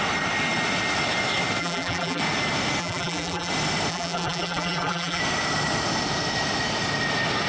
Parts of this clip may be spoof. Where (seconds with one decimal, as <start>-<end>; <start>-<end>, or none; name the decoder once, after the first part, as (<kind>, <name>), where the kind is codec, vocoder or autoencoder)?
1.6-2.2 (vocoder, BigVGAN v2); 2.8-3.5; 3.9-5.2